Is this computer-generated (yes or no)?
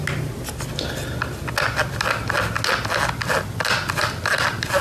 no